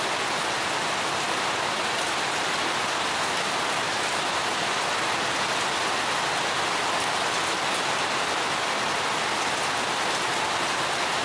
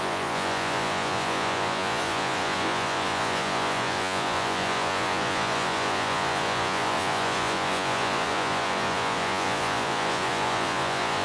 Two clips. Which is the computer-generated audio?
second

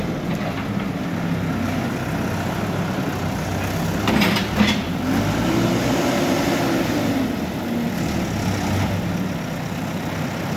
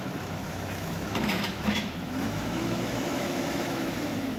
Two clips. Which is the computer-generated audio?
second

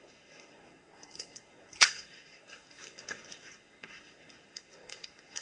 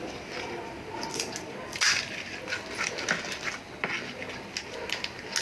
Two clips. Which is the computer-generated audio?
first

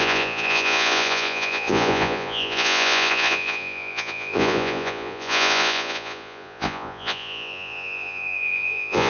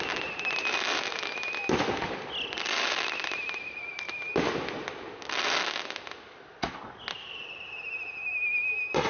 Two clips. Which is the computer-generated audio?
first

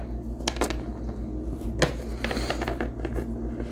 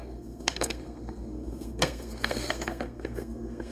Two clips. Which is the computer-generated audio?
second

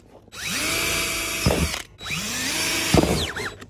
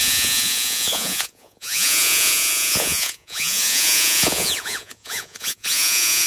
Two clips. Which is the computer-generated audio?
second